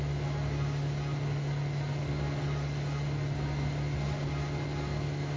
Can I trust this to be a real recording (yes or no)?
yes